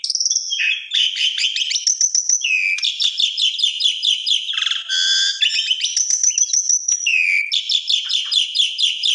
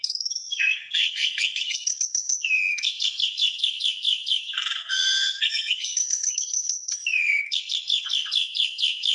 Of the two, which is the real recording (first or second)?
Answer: first